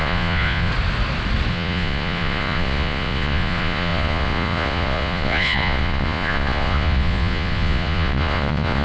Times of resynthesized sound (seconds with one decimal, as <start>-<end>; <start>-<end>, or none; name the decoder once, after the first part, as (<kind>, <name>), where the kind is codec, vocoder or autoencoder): 0.0-0.7 (vocoder, Vocos); 1.5-8.8